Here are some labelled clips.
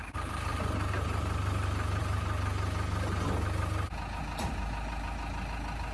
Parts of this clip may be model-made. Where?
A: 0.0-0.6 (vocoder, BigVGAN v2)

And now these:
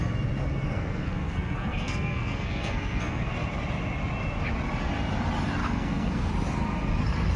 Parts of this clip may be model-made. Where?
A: 0.5-3.3 (codec, SNAC); 5.6-6.3

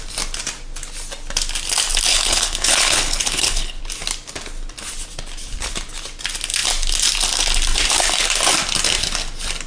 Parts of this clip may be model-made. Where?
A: 2.1-3.8 (codec, HILCodec)

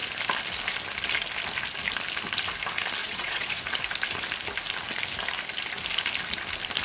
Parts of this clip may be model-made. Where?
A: 3.0-3.6 (vocoder, Vocos)

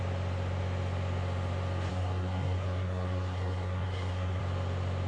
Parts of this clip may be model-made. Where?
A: 1.9-4.4 (codec, SNAC)

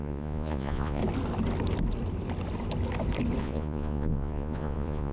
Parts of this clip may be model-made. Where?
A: 0.0-1.0 (vocoder, Vocos); 3.4-5.1

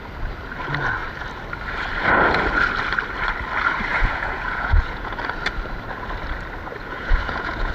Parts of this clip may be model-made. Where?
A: 3.9-5.2 (vocoder, Vocos); 6.8-7.7

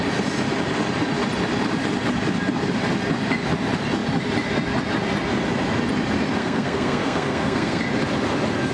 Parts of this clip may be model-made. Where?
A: 6.4-7.8 (codec, SNAC)